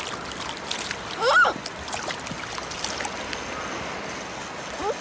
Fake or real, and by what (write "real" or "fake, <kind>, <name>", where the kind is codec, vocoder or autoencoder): real